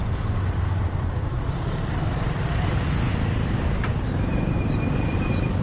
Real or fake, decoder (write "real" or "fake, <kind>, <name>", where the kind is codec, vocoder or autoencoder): fake, vocoder, BigVGAN v2